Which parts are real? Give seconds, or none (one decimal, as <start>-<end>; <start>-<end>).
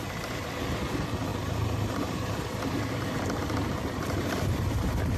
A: 0.0-1.3; 2.9-3.8; 4.6-5.2